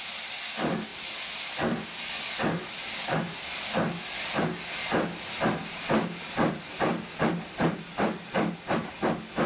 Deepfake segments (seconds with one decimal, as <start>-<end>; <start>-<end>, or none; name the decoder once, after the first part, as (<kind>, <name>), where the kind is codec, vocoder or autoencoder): none